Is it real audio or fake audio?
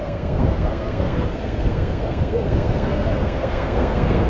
fake